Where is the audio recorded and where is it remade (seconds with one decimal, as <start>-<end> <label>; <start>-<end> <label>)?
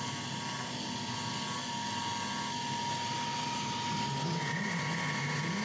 0.0-5.6 recorded